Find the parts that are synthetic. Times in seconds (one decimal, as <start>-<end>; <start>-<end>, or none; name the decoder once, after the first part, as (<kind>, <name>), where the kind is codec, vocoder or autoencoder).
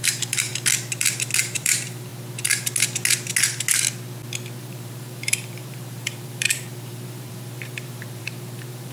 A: 0.0-0.5 (vocoder, BigVGAN v2); 1.4-2.1; 4.6-8.9